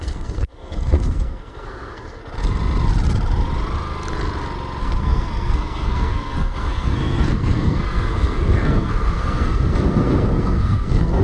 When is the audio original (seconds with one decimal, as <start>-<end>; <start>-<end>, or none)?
2.2-4.8